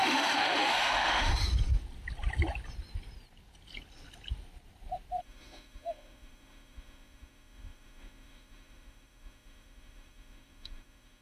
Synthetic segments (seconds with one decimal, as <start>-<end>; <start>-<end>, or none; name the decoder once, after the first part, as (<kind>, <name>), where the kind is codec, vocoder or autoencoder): 0.0-1.3 (autoencoder, DAC-VAE); 5.2-11.2